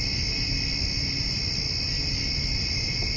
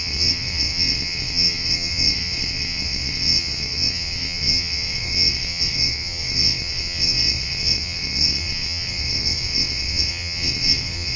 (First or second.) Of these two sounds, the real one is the first